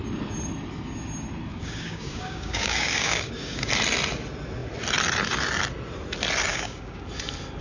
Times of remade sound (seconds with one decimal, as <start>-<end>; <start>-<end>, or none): 1.5-3.7; 6.5-7.0